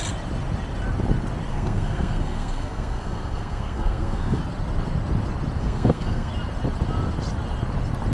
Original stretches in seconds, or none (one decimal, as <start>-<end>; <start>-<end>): 0.0-1.5; 4.4-5.6; 6.3-8.1